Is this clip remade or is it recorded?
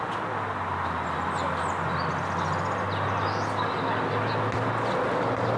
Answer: recorded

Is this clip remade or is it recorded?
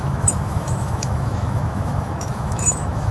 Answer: remade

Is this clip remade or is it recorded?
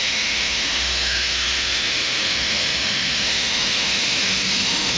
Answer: remade